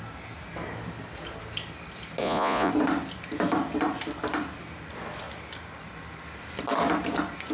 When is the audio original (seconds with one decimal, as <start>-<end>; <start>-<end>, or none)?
0.0-2.2; 2.7-7.5